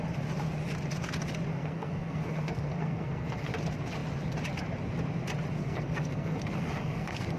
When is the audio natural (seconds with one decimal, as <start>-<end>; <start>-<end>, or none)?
0.0-1.5; 3.5-5.6